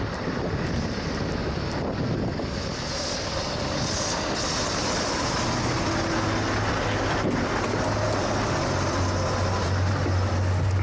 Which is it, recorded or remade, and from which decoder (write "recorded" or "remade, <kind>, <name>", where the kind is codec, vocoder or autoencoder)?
recorded